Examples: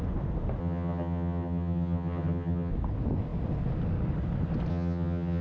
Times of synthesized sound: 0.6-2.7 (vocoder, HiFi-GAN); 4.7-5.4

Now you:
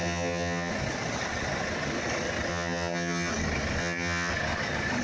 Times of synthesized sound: 0.0-0.7 (vocoder, HiFi-GAN); 2.5-3.3; 3.8-4.3

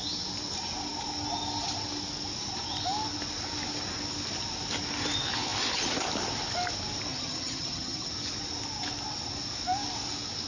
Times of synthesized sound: 7.1-8.1 (vocoder, HiFi-GAN)

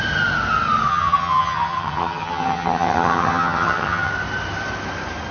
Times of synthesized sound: 0.9-4.1 (vocoder, HiFi-GAN)

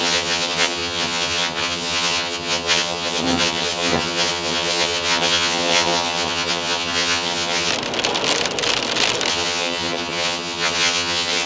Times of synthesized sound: 0.0-7.7 (vocoder, HiFi-GAN); 9.3-11.5